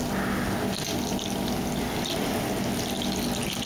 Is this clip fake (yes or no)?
no